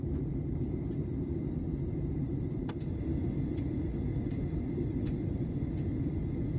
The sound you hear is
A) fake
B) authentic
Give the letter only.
A